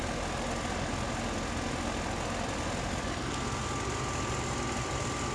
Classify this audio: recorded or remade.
recorded